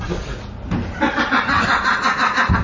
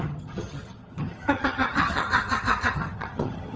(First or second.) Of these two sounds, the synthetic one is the second